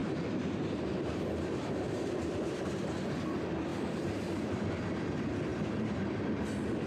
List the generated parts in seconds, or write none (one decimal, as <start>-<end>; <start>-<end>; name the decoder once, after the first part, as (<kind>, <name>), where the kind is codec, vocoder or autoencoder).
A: 0.0-2.9 (vocoder, BigVGAN v2); 3.7-4.6; 5.5-6.5